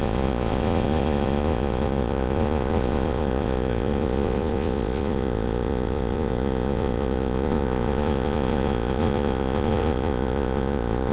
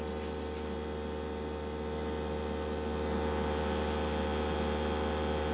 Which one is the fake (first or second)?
first